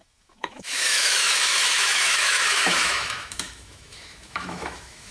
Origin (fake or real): fake